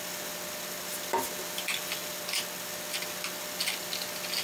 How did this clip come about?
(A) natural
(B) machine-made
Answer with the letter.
A